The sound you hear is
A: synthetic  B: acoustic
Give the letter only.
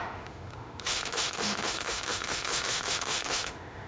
A